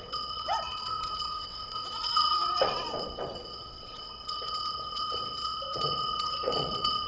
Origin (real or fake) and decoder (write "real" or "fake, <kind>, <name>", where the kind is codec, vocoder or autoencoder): fake, vocoder, WaveNeXt